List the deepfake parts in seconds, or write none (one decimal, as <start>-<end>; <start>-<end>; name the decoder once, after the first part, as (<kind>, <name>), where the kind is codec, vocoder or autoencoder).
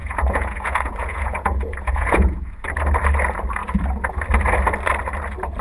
0.0-2.6 (vocoder, Vocos)